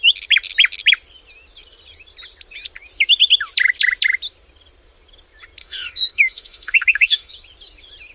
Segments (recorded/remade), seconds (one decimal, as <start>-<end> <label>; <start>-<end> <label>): 0.0-5.6 recorded; 5.6-7.3 remade; 7.3-8.1 recorded